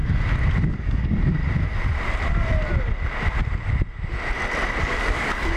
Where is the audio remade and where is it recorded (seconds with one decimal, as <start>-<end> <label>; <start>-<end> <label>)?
0.0-0.7 recorded; 0.7-1.4 remade; 1.4-4.8 recorded; 4.8-5.6 remade